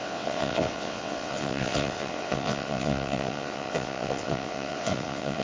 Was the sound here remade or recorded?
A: remade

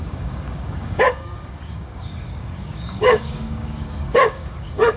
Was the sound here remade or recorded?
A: remade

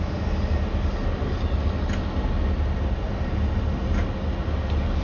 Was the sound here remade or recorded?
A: recorded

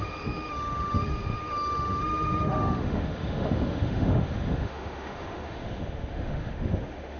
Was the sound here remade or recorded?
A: remade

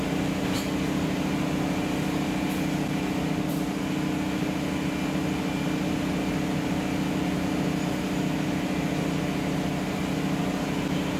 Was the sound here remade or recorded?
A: recorded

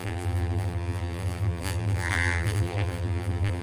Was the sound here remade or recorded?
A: remade